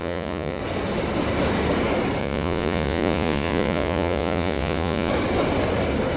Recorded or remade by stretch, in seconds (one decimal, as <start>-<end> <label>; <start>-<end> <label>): 0.0-0.6 remade; 0.6-2.2 recorded; 2.2-5.1 remade; 5.1-6.2 recorded

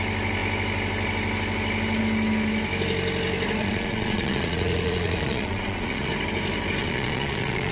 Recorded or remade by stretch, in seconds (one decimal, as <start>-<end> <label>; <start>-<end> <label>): 0.0-3.6 recorded; 3.6-6.1 remade; 6.1-6.8 recorded; 6.8-7.7 remade